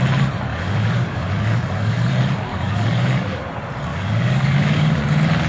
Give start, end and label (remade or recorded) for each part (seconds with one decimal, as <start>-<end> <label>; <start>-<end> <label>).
0.0-0.5 recorded; 0.5-2.1 remade; 2.1-2.5 recorded; 2.5-3.4 remade; 3.4-3.9 recorded; 3.9-5.0 remade; 5.0-5.5 recorded